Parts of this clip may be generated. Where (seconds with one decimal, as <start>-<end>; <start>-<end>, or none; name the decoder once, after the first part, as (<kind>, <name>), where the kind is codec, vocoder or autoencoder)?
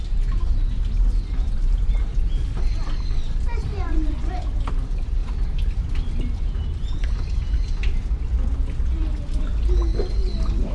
3.7-4.3 (vocoder, Vocos)